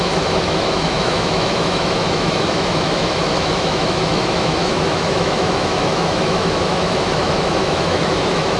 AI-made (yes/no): yes